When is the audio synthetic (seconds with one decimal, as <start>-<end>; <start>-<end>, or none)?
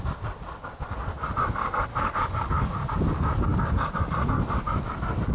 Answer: 1.9-2.9